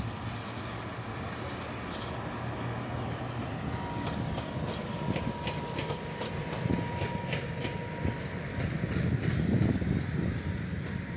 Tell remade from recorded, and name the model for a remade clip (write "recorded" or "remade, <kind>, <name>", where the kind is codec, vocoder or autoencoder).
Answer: recorded